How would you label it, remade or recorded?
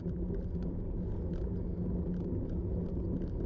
recorded